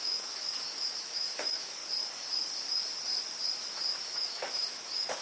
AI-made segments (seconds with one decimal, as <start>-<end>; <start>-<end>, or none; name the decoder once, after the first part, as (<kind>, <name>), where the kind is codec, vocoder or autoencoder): 0.0-1.8 (autoencoder, DAC-VAE); 4.1-5.2